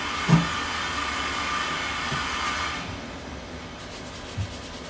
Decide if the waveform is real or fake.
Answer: real